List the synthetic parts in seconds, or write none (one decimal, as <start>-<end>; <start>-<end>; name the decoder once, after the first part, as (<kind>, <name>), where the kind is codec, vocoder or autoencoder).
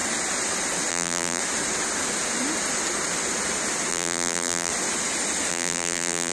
0.9-1.4 (vocoder, BigVGAN v2); 3.9-4.7; 5.5-6.3